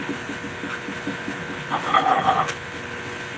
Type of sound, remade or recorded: remade